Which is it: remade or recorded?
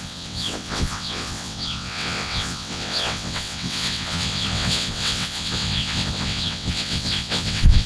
remade